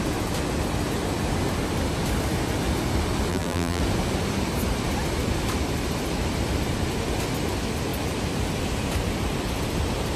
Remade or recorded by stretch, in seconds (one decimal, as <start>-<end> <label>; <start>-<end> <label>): 0.0-3.3 recorded; 3.3-3.8 remade; 3.8-10.2 recorded